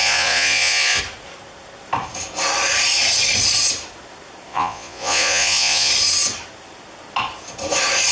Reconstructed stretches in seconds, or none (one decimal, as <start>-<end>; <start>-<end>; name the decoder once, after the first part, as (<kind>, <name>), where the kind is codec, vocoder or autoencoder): 0.0-1.0 (vocoder, Vocos); 4.5-5.9